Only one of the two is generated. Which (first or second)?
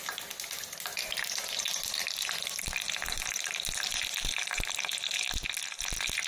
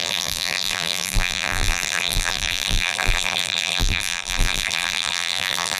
second